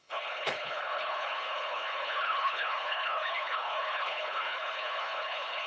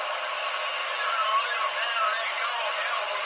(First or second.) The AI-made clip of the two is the first